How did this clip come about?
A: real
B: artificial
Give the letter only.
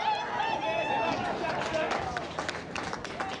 A